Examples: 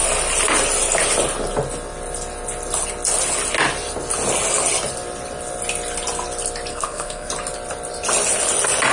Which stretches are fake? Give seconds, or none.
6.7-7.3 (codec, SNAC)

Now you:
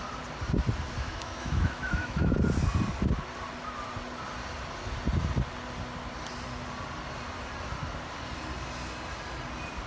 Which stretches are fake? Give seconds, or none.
1.0-2.3 (autoencoder, DAC-VAE)

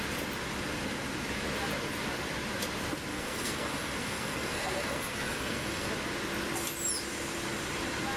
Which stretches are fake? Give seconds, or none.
3.1-5.9 (codec, SNAC)

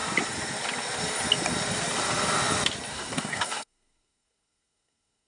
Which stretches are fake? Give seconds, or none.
2.9-5.3 (codec, SNAC)